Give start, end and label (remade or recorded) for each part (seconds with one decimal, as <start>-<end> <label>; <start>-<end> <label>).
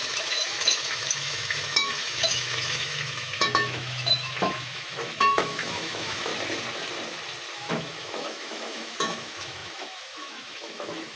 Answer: 0.0-6.3 remade; 6.3-7.5 recorded; 7.5-11.2 remade